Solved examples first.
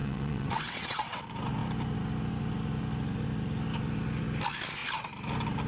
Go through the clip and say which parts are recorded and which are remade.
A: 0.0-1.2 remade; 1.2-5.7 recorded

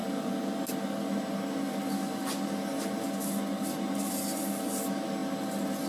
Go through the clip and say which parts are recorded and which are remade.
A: 0.0-5.9 recorded

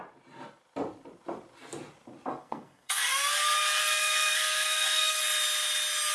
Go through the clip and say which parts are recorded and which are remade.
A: 0.0-2.4 recorded; 2.4-3.3 remade; 3.3-3.8 recorded; 3.8-5.2 remade; 5.2-6.1 recorded

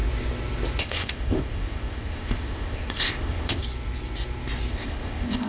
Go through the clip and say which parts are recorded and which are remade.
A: 0.0-0.8 recorded; 0.8-3.6 remade; 3.6-4.7 recorded; 4.7-5.5 remade

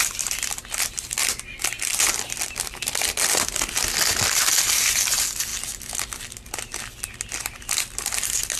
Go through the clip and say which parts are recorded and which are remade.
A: 0.0-8.6 recorded

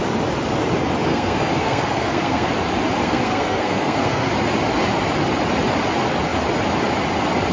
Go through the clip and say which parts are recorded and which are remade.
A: 0.0-1.1 recorded; 1.1-2.5 remade; 2.5-3.0 recorded; 3.0-4.3 remade; 4.3-7.5 recorded